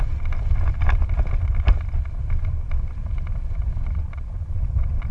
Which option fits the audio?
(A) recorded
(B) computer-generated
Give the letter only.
A